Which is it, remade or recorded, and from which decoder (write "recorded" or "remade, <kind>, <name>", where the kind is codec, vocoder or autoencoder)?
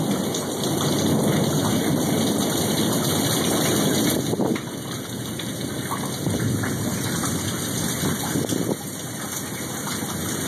recorded